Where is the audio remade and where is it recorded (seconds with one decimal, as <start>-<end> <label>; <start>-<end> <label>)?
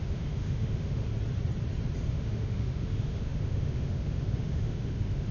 0.0-1.1 remade; 1.1-2.1 recorded; 2.1-5.3 remade